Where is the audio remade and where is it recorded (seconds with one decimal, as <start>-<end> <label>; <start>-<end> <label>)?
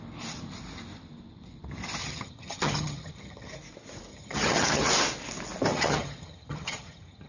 0.0-2.0 recorded; 2.0-3.5 remade; 3.5-4.1 recorded; 4.1-4.9 remade; 4.9-5.7 recorded; 5.7-7.3 remade